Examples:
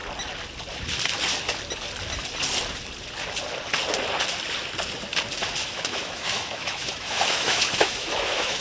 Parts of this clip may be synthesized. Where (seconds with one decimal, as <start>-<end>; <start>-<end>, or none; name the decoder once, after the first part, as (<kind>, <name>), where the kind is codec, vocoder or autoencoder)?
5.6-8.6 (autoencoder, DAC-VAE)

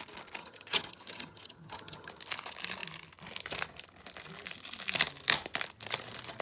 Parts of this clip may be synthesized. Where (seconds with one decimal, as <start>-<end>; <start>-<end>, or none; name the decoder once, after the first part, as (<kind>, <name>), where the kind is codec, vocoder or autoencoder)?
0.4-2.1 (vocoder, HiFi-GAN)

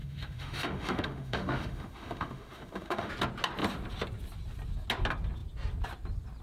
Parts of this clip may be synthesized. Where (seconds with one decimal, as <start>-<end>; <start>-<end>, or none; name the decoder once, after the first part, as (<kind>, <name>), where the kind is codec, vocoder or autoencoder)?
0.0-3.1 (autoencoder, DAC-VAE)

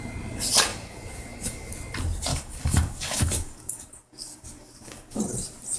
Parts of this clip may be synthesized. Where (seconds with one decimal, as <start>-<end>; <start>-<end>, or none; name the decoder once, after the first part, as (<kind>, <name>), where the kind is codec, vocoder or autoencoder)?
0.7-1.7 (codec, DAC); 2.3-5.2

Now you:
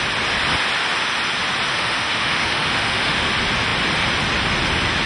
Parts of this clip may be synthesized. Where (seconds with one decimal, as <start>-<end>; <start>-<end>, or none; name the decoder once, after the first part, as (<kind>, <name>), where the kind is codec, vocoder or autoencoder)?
1.7-3.3 (autoencoder, DAC-VAE)